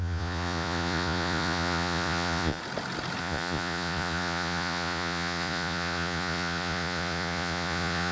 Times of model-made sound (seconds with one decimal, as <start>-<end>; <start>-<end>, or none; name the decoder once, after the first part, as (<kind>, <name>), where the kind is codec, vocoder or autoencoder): 0.0-2.6 (vocoder, Vocos); 3.2-8.1